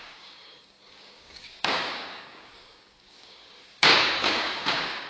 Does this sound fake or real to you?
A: fake